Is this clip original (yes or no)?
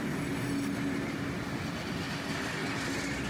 yes